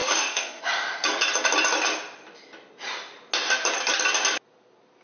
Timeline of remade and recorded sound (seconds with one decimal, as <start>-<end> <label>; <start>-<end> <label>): 0.0-0.6 remade; 0.6-5.0 recorded